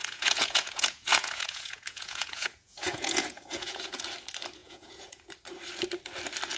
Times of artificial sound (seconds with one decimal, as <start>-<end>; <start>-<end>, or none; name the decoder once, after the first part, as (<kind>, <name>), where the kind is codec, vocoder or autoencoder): 0.0-4.0 (vocoder, Vocos); 4.6-5.3